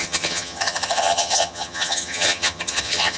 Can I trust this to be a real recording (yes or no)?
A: no